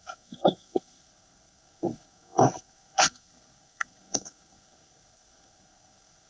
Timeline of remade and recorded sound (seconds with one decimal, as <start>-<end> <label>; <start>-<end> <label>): 0.0-6.3 remade

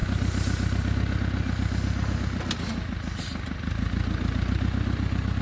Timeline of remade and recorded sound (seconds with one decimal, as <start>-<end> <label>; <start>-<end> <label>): 0.0-5.4 recorded

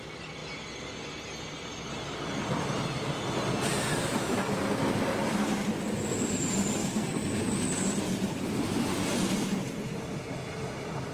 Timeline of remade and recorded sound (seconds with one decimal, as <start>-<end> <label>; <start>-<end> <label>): 0.0-6.8 recorded; 6.8-7.4 remade; 7.4-11.1 recorded

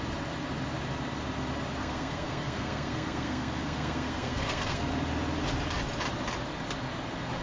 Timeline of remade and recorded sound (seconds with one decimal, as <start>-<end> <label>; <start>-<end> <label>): 0.0-1.8 recorded; 1.8-4.8 remade; 4.8-7.4 recorded